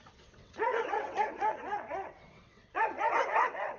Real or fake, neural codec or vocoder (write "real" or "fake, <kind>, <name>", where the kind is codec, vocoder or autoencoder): fake, vocoder, WaveNeXt